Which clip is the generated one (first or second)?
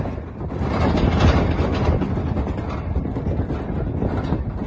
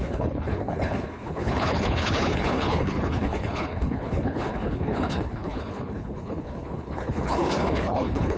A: second